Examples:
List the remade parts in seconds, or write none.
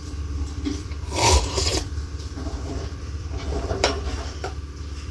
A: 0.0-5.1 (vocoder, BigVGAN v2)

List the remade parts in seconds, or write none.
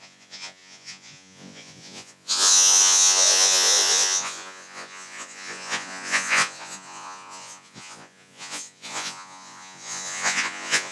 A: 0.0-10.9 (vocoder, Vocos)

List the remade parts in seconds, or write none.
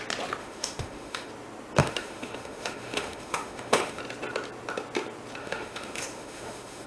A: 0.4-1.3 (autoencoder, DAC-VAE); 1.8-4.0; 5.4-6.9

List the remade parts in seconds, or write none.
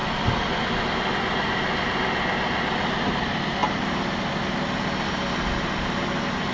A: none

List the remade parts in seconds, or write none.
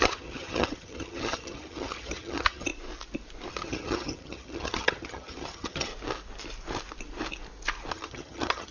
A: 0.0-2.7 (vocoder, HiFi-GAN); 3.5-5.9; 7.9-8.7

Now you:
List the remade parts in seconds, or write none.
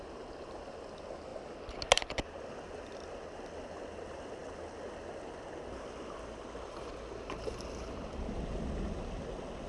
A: none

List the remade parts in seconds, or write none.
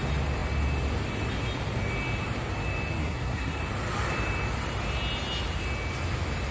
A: 3.0-3.6 (codec, SNAC)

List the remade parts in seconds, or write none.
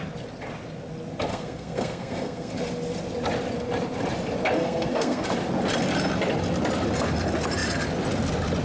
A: 1.3-2.5 (codec, SNAC); 4.6-5.2